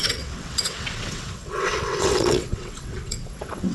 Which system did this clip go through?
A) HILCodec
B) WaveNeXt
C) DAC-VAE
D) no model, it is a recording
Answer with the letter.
B